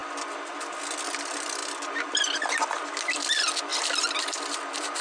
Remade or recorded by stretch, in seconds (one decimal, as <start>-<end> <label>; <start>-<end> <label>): 0.0-5.0 recorded